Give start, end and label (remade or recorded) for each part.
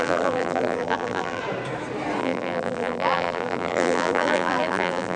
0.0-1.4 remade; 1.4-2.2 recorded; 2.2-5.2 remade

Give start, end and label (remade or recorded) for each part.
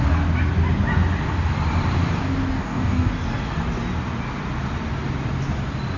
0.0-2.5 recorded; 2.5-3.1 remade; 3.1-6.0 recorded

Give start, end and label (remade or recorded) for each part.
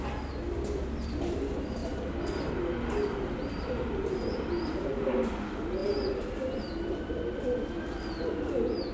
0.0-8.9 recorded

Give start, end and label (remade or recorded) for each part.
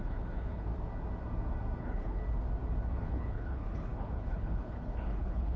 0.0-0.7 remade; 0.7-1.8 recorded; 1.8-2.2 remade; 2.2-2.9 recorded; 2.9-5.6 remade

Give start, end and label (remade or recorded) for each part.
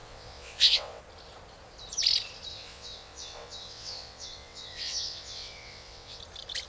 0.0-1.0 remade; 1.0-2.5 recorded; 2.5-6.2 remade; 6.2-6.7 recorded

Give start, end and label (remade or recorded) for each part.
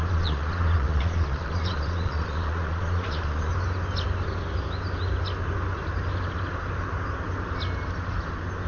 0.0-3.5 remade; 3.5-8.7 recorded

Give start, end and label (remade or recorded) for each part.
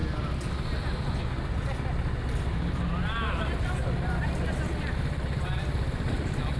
0.0-6.6 recorded